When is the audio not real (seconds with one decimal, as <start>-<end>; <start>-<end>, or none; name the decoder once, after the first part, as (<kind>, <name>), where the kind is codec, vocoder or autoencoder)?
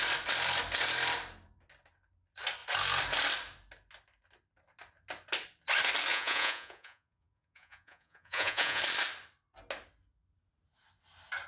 6.1-8.8 (vocoder, Vocos)